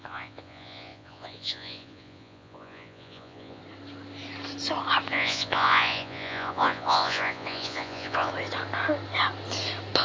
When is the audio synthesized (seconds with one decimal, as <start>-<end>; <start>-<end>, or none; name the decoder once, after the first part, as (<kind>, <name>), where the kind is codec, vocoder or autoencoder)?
0.0-3.6 (vocoder, Vocos); 5.1-8.3